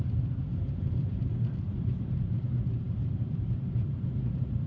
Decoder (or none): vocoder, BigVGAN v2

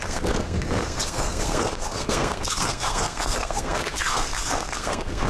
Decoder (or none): codec, SNAC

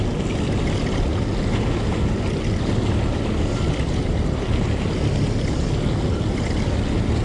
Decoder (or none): none